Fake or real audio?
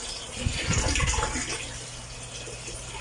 real